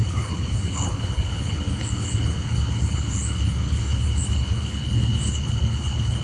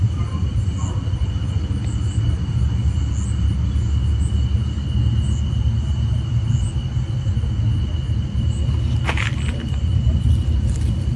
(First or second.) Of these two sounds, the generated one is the first